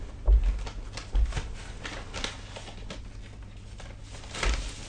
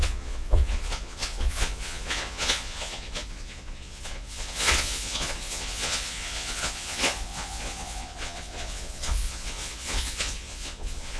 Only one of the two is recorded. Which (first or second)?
first